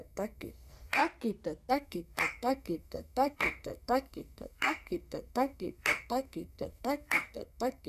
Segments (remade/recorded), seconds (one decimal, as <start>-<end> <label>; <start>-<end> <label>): 0.0-1.0 remade; 1.0-1.7 recorded; 1.7-7.9 remade